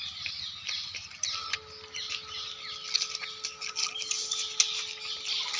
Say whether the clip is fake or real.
real